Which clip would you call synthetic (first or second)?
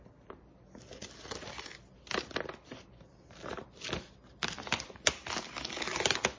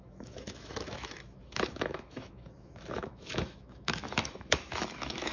second